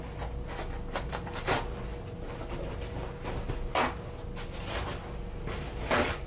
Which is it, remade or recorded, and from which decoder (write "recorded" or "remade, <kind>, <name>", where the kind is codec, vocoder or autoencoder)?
recorded